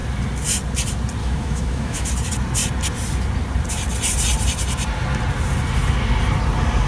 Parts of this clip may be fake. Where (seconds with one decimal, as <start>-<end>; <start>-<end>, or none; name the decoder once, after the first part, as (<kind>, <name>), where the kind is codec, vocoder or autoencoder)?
1.2-2.1 (autoencoder, DAC-VAE)